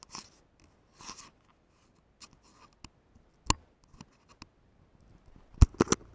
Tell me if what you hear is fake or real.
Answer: real